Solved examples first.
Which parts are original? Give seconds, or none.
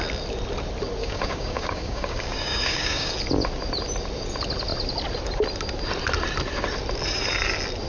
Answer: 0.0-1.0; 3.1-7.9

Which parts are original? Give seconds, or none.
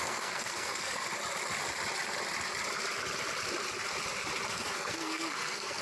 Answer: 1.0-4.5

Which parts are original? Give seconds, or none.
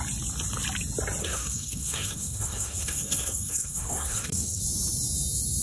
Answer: 0.0-1.2; 4.6-5.6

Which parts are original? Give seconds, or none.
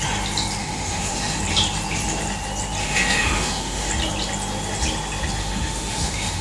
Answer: 0.0-0.6; 1.4-2.8; 3.9-5.4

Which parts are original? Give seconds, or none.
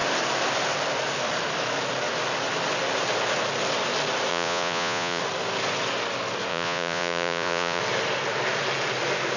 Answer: 0.0-4.3; 5.2-6.5; 7.8-9.4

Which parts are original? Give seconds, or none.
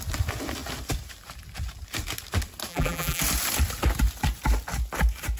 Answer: 0.0-2.7; 3.2-5.4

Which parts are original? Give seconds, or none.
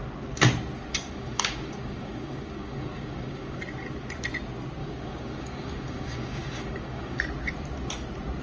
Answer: 0.0-0.9; 3.6-4.8; 7.2-8.4